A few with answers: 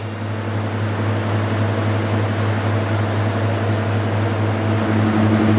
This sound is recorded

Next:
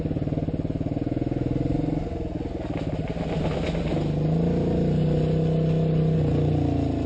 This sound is recorded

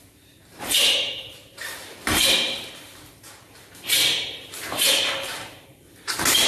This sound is remade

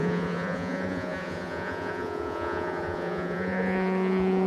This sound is remade